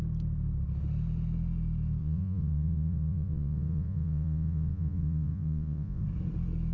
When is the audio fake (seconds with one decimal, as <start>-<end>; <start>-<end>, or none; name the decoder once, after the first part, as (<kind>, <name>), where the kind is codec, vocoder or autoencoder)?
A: 2.0-6.0 (vocoder, Vocos)